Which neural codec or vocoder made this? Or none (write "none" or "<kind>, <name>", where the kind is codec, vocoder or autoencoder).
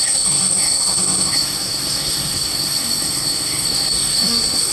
codec, SNAC